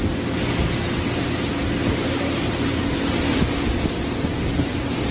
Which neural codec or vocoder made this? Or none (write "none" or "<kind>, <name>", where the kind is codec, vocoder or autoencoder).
none